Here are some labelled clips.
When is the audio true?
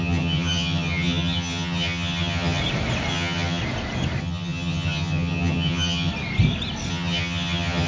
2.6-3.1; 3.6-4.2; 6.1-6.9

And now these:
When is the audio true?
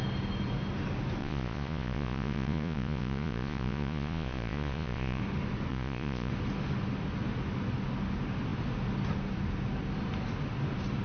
0.0-1.2; 5.2-5.7; 6.3-11.0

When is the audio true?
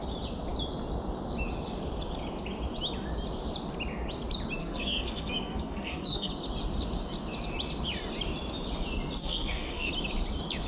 0.0-4.6; 6.3-9.2; 9.9-10.7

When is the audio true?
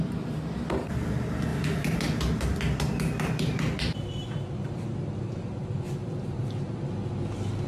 0.0-1.5; 2.0-6.0; 7.1-7.7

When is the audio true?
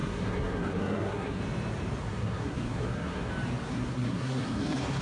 1.4-2.0; 3.3-3.7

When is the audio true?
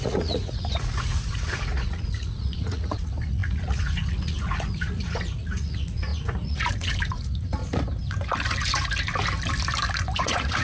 7.6-10.2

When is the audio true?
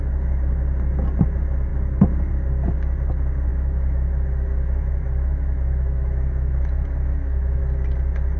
0.0-3.5; 7.6-8.4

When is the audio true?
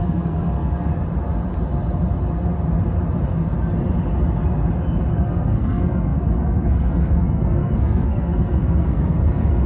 0.9-5.1